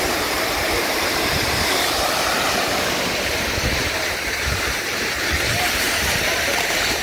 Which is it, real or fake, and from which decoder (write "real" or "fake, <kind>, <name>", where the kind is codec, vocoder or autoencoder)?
fake, vocoder, BigVGAN v2